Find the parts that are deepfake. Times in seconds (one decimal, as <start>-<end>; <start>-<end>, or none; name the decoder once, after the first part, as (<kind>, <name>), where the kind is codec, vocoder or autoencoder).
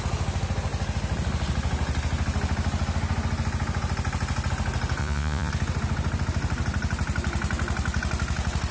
5.0-5.5 (vocoder, Vocos)